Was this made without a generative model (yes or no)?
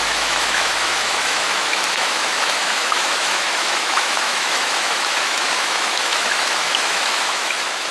no